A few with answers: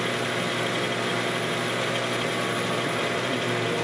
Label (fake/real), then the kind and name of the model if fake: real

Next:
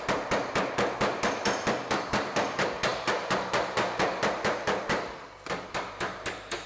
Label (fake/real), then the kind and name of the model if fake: fake, vocoder, BigVGAN v2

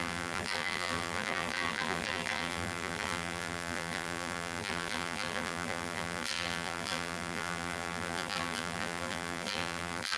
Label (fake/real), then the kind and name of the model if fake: fake, vocoder, BigVGAN v2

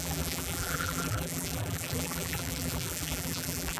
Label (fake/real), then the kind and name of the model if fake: fake, vocoder, BigVGAN v2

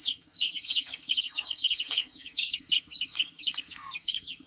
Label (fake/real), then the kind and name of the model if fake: fake, codec, SNAC